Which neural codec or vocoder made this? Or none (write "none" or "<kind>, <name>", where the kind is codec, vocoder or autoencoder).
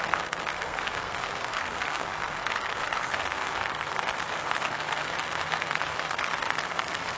codec, SNAC